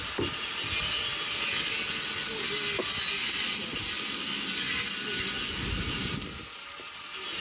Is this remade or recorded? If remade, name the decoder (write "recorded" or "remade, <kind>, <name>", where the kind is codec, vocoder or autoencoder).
recorded